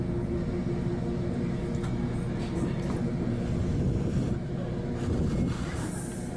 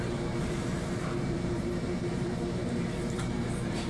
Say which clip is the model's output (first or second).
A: second